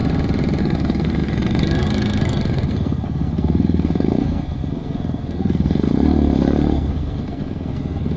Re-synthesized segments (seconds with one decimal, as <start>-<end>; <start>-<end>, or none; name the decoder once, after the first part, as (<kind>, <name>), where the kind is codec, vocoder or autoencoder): 0.6-8.2 (codec, SNAC)